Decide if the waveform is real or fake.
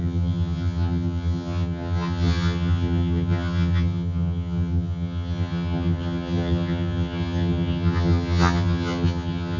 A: fake